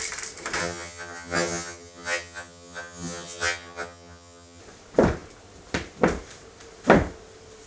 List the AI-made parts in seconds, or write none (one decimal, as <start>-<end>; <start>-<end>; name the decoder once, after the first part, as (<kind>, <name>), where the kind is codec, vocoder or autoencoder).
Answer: 0.6-4.6 (vocoder, HiFi-GAN)